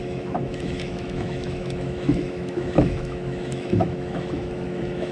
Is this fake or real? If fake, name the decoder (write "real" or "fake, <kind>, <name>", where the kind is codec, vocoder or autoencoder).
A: fake, autoencoder, DAC-VAE